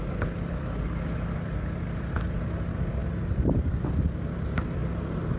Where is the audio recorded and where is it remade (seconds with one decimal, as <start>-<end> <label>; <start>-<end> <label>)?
0.0-5.4 recorded